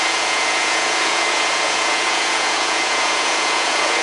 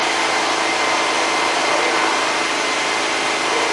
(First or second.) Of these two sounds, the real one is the second